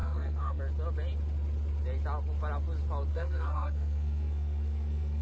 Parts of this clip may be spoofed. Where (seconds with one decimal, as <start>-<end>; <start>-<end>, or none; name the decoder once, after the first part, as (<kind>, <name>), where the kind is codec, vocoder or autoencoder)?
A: 0.0-0.6 (codec, SNAC); 3.1-5.2